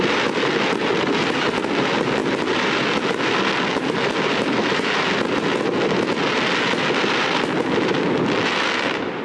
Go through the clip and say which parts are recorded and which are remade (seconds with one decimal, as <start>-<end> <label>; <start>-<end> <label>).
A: 0.0-9.2 recorded